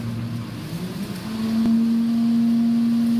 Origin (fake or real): real